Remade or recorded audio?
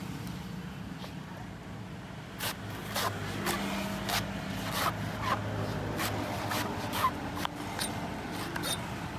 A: recorded